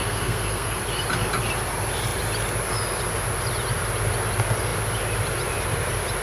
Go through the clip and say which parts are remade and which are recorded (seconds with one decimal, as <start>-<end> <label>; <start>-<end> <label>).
0.0-0.8 remade; 0.8-6.2 recorded